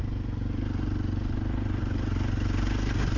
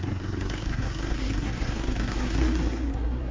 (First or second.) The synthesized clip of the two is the second